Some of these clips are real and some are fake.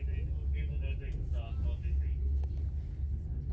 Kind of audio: real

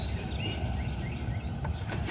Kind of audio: real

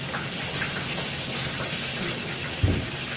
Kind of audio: real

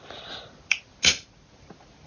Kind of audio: real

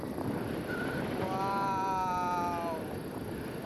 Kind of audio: real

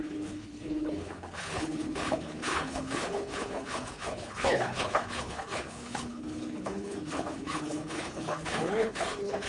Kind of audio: fake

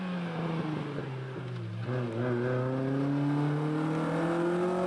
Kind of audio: real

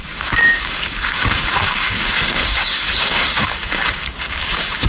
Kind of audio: fake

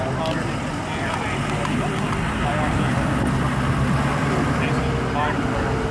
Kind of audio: real